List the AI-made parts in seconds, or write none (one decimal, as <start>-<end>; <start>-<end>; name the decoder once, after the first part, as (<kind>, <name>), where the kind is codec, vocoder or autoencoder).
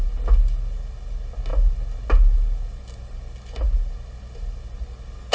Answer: none